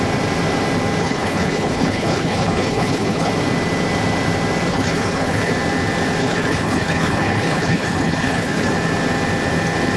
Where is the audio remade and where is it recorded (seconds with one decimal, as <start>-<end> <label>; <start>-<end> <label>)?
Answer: 0.0-1.0 recorded; 1.0-3.3 remade; 3.3-4.7 recorded; 4.7-5.5 remade; 5.5-6.2 recorded; 6.2-8.7 remade; 8.7-10.0 recorded